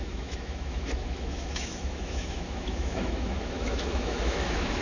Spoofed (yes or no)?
yes